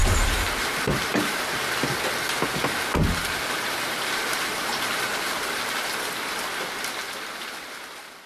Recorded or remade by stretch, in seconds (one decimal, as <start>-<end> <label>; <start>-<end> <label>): 0.0-1.4 remade; 1.4-2.9 recorded; 2.9-5.6 remade; 5.6-8.3 recorded